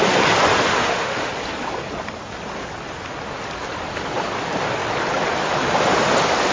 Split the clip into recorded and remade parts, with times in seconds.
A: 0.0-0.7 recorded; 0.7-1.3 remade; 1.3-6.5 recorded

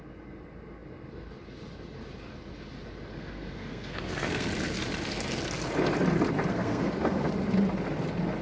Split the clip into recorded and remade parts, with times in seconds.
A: 0.0-3.1 recorded; 3.1-4.5 remade; 4.5-6.5 recorded; 6.5-7.3 remade; 7.3-8.4 recorded

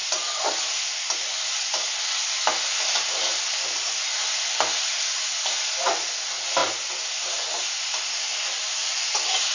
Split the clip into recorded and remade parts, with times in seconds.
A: 0.0-9.5 recorded

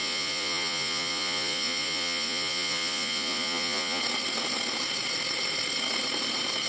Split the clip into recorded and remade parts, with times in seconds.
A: 0.0-4.0 remade; 4.0-6.7 recorded

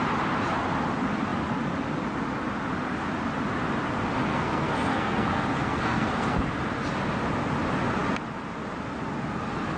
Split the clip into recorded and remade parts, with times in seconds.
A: 0.0-4.3 recorded; 4.3-6.4 remade; 6.4-9.8 recorded

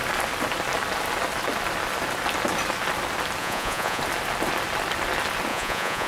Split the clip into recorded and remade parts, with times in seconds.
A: 0.0-3.4 recorded; 3.4-4.0 remade; 4.0-5.5 recorded; 5.5-6.1 remade